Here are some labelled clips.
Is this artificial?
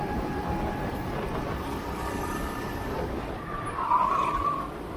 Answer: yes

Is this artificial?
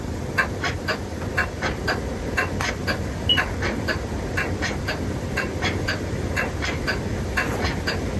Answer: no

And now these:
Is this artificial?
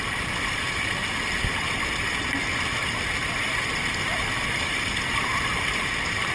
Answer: yes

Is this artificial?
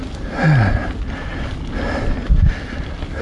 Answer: no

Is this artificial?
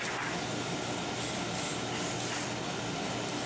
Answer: no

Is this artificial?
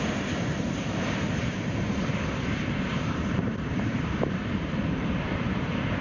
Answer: yes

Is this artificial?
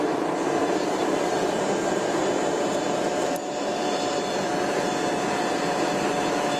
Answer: yes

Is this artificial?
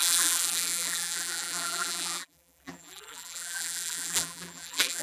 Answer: yes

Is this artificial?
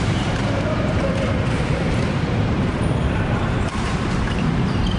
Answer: yes